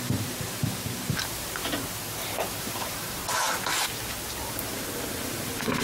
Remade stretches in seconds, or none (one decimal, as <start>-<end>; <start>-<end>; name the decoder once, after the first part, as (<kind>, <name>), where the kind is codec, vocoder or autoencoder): 0.0-1.6 (vocoder, BigVGAN v2); 2.6-3.2; 5.1-5.8